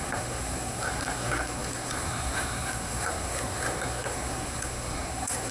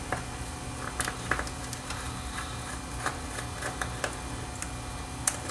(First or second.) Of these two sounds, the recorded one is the second